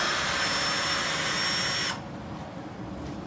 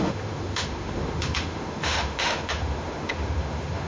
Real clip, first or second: first